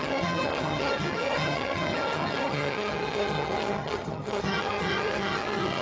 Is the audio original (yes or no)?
no